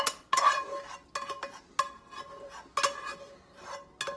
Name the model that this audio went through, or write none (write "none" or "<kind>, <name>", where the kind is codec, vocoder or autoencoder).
none